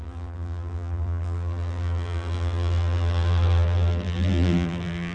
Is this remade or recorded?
remade